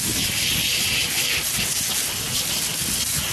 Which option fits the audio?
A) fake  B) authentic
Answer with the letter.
B